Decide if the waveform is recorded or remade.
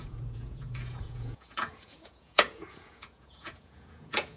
remade